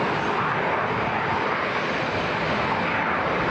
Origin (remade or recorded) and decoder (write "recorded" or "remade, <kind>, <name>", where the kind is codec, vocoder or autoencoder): recorded